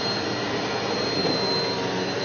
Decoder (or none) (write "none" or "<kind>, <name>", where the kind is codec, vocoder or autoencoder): none